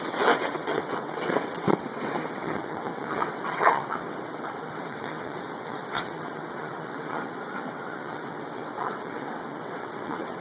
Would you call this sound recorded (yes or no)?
no